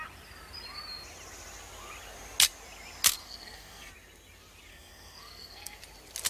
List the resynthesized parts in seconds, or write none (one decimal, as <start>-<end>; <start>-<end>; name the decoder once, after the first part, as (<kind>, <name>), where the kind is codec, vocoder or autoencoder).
3.2-3.9 (codec, SNAC); 4.7-5.8